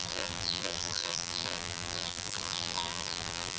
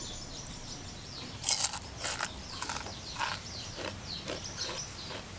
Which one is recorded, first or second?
second